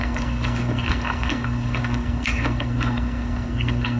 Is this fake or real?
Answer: fake